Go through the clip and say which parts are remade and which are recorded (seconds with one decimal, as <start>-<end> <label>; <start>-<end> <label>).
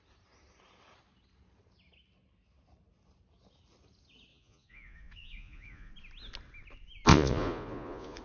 0.0-4.3 recorded; 4.3-5.9 remade; 5.9-7.1 recorded; 7.1-8.2 remade